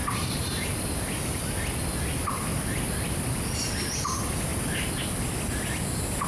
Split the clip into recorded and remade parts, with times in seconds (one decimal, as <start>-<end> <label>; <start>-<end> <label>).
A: 0.0-0.7 remade; 0.7-4.5 recorded; 4.5-5.0 remade; 5.0-6.3 recorded